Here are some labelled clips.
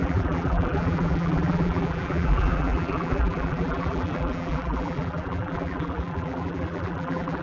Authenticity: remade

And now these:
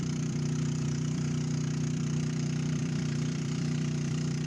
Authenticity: remade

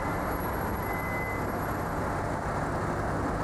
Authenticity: recorded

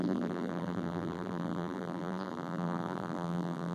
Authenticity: remade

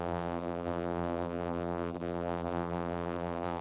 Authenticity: remade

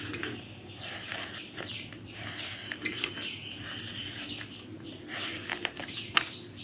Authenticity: recorded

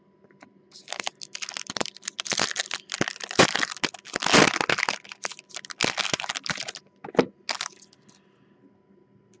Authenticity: recorded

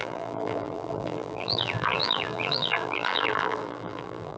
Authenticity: remade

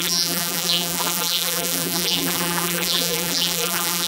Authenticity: remade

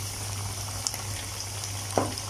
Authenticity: remade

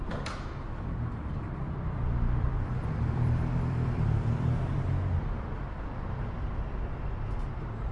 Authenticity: remade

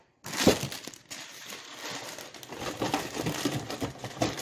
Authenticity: recorded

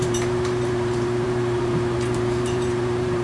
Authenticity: remade